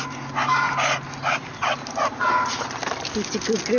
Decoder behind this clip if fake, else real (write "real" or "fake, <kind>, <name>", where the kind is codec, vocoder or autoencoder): real